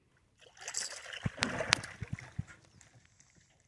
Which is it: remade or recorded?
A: recorded